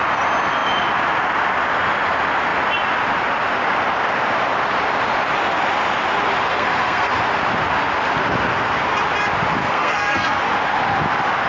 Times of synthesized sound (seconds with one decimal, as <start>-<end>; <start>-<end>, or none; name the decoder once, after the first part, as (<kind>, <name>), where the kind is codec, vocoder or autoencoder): 6.5-7.1 (codec, SNAC); 9.6-10.4